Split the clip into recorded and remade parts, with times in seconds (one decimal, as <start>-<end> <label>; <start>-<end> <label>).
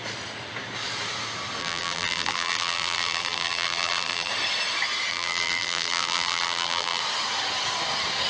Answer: 0.0-1.6 recorded; 1.6-4.3 remade; 4.3-5.1 recorded; 5.1-7.0 remade; 7.0-8.3 recorded